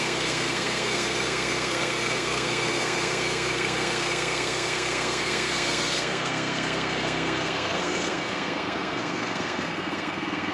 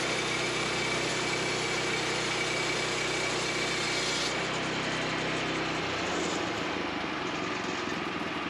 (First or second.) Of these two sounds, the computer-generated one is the first